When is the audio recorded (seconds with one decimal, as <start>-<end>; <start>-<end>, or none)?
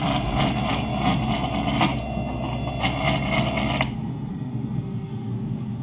0.0-4.3; 5.3-5.8